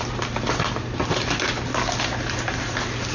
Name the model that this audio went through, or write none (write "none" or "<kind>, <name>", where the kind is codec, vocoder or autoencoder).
none